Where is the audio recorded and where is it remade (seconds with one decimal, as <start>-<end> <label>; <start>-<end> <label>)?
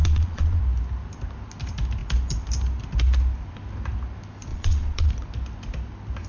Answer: 0.0-0.6 remade; 0.6-4.5 recorded; 4.5-5.1 remade; 5.1-6.3 recorded